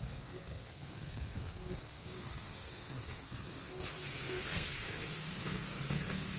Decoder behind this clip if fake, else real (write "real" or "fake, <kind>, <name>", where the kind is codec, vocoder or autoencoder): fake, codec, SNAC